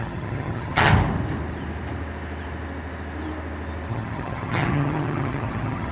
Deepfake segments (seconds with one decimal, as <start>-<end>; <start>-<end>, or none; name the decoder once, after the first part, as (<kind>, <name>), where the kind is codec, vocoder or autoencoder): 0.0-0.9 (vocoder, HiFi-GAN); 3.9-5.9